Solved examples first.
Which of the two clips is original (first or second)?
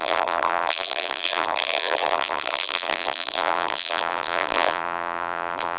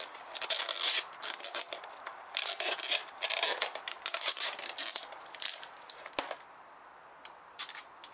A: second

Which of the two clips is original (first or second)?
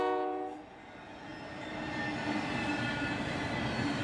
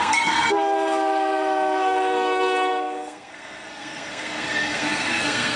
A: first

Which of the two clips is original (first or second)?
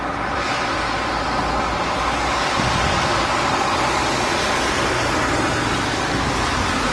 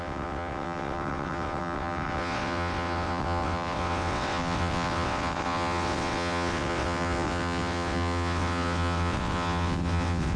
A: first